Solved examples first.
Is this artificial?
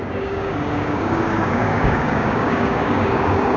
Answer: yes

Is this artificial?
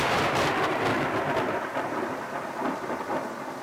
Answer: no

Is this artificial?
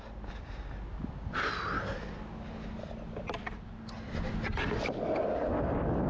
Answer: no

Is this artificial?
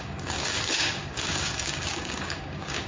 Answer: yes